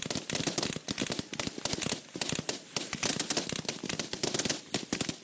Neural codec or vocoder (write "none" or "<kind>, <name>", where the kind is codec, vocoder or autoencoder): none